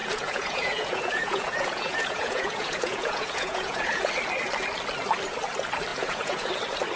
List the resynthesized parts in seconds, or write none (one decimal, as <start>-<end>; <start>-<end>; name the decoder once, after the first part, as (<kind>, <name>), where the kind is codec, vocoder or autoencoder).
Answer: 0.0-4.1 (vocoder, Vocos); 5.9-6.5